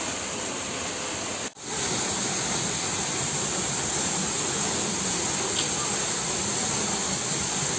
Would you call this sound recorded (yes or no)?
yes